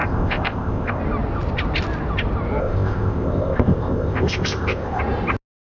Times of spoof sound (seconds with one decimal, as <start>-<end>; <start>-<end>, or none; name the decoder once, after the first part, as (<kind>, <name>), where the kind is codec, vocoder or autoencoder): 0.0-1.0 (codec, ZipCodec); 2.6-5.0